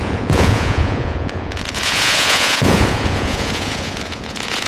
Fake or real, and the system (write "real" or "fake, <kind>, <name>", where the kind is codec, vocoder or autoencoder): fake, vocoder, Vocos